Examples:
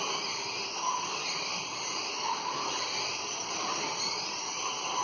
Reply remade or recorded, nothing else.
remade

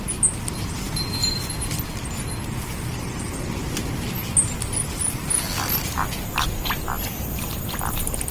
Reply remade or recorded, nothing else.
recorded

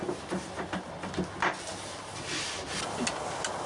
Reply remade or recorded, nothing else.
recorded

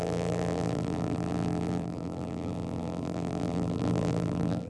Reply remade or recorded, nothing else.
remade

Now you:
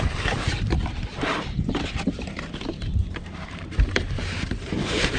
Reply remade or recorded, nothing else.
remade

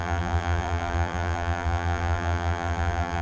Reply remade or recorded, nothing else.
remade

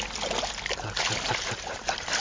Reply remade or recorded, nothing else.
recorded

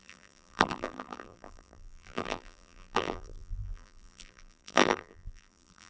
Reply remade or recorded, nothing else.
remade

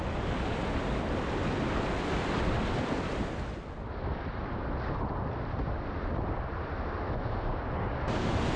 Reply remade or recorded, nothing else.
recorded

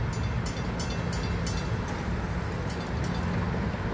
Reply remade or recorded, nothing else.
recorded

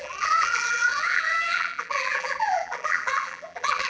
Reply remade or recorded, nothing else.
remade